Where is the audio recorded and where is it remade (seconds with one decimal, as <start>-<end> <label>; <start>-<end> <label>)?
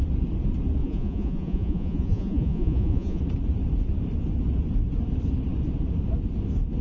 0.0-0.8 recorded; 0.8-3.2 remade; 3.2-6.8 recorded